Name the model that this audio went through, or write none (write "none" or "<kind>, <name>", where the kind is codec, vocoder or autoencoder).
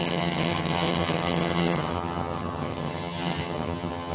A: vocoder, HiFi-GAN